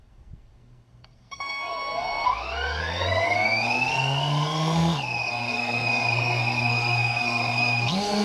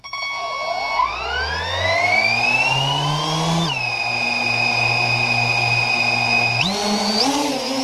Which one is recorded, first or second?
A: second